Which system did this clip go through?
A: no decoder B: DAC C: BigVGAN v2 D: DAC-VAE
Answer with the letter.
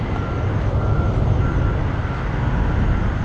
A